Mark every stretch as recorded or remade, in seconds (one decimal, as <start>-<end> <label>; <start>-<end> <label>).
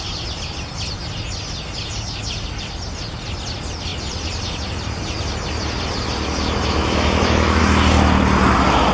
0.0-6.8 recorded; 6.8-7.6 remade; 7.6-8.9 recorded